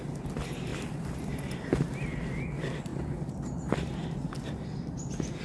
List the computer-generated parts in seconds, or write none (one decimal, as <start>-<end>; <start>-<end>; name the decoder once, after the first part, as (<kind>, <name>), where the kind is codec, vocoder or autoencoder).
0.7-1.7 (vocoder, BigVGAN v2); 2.9-3.8